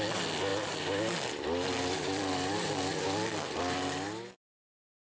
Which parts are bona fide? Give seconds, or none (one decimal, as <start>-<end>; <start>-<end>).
0.0-5.2